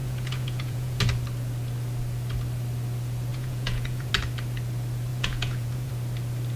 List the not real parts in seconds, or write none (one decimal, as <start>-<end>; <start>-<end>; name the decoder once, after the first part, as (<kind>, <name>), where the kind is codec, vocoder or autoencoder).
0.0-1.0 (vocoder, Vocos); 3.3-4.1; 5.1-5.9